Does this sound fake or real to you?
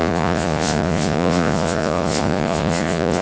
fake